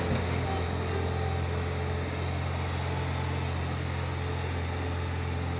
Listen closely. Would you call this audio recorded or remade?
recorded